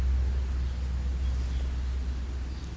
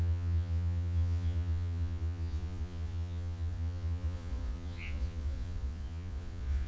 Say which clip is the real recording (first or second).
first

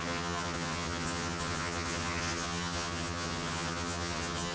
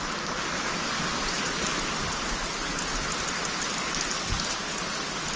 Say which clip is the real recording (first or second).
second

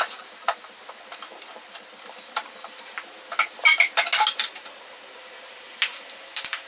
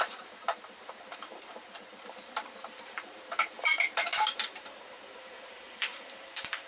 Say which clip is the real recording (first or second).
first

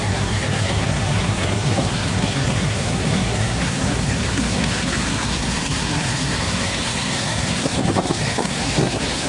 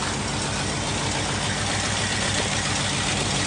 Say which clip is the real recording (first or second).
second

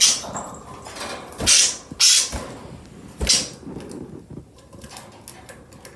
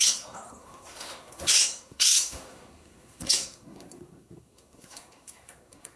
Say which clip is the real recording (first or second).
first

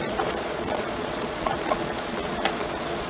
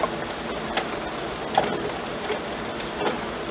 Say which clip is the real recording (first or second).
second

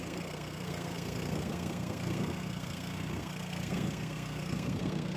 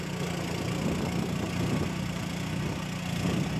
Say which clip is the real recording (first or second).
second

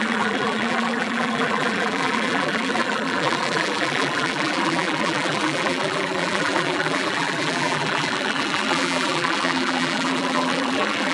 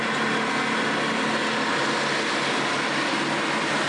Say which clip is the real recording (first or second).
second